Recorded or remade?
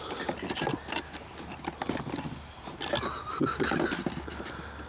recorded